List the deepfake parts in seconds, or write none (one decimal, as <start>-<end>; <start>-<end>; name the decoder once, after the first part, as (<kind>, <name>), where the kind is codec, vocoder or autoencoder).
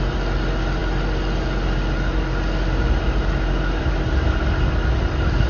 none